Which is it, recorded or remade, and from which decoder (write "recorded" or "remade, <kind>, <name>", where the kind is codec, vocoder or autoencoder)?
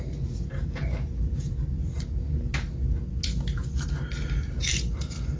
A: recorded